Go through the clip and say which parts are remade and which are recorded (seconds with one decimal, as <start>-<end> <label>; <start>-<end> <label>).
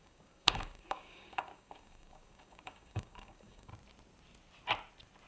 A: 0.0-3.7 remade; 3.7-5.3 recorded